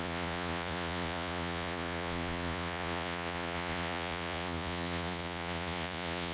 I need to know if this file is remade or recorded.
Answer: remade